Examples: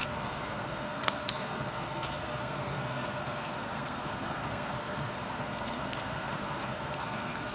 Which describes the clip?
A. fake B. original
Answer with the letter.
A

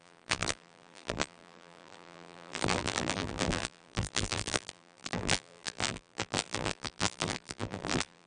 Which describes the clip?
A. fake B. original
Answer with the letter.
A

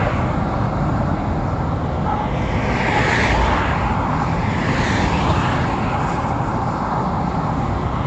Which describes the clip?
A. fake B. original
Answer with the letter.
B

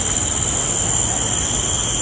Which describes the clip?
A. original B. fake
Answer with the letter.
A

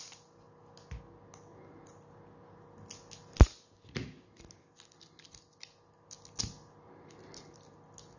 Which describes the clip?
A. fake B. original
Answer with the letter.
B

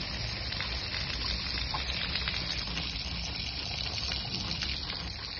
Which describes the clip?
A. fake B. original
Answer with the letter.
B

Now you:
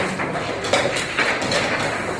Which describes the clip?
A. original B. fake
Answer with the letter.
A